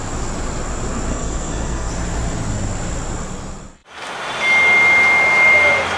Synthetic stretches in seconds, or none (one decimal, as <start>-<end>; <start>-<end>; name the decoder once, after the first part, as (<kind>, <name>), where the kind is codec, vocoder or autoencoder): 1.1-1.9 (codec, SNAC)